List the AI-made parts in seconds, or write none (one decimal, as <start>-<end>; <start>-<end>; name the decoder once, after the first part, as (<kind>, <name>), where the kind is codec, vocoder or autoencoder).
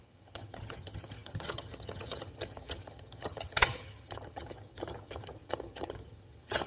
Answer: 0.0-6.7 (vocoder, HiFi-GAN)